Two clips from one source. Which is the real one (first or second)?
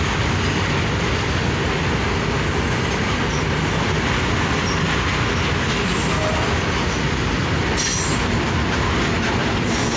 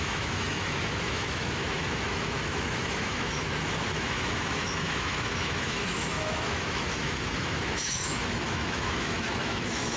first